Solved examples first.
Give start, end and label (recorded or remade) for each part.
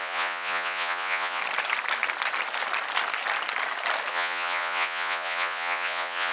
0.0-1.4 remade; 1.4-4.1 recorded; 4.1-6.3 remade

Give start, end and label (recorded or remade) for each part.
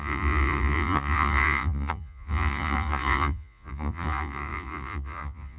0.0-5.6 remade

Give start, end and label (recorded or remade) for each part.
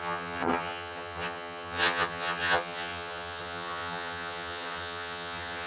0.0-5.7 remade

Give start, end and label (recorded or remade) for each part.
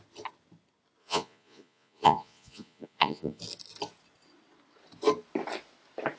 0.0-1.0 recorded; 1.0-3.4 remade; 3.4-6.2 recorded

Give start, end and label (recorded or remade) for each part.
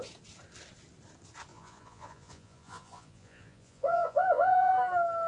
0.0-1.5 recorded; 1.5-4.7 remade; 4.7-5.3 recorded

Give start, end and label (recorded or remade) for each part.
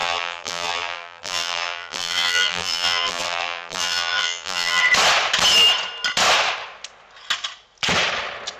0.0-4.8 remade; 4.8-8.6 recorded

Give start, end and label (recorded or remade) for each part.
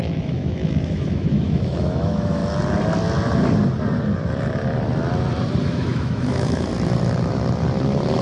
0.0-2.4 remade; 2.4-5.6 recorded; 5.6-6.7 remade; 6.7-8.2 recorded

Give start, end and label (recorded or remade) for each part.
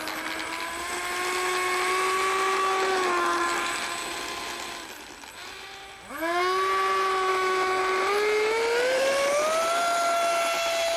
0.0-7.3 recorded; 7.3-7.8 remade; 7.8-11.0 recorded